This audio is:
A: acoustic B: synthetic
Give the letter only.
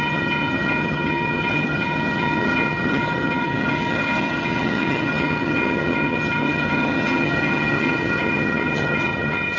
B